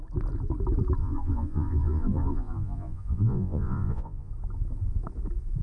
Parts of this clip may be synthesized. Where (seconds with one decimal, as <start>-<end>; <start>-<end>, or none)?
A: 1.0-4.3